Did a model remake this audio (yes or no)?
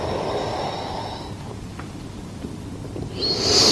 no